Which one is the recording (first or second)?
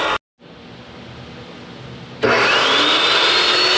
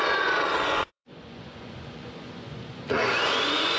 first